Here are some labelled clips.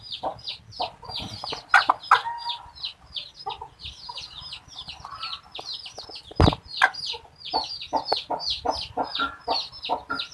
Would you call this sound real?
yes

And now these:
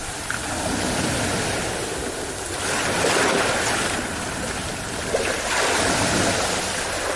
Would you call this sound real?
yes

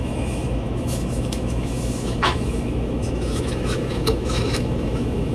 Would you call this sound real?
no